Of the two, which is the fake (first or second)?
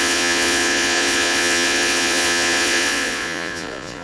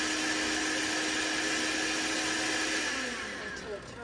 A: first